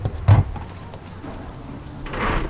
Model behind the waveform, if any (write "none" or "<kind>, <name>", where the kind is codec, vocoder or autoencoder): vocoder, BigVGAN v2